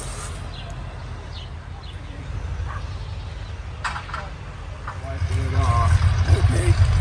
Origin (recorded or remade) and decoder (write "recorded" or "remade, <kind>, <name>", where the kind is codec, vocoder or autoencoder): recorded